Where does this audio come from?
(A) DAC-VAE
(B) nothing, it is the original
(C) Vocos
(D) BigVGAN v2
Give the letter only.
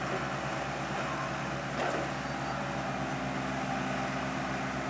B